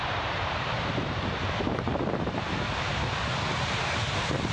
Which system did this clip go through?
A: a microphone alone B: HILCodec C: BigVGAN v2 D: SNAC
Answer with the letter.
C